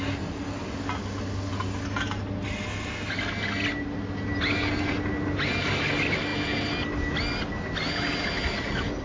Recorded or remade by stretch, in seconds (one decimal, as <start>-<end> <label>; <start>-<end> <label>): 0.0-9.0 recorded